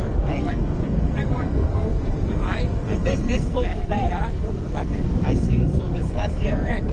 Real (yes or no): no